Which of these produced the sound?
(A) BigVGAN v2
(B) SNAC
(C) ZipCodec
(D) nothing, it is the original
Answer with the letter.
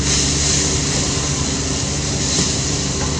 A